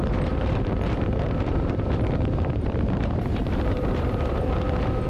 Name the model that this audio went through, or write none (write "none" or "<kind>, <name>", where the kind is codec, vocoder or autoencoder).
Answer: vocoder, BigVGAN v2